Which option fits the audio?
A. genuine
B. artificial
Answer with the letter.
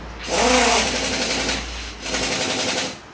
A